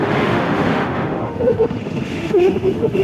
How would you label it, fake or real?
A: fake